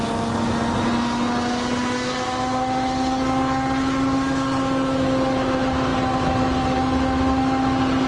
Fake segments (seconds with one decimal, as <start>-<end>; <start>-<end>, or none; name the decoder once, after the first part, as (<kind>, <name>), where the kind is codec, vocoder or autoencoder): none